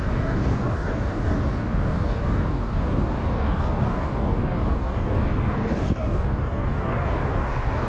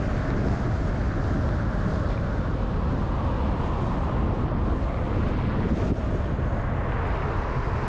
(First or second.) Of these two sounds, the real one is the second